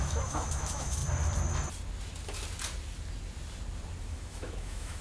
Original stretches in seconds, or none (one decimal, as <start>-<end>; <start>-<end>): 1.0-4.0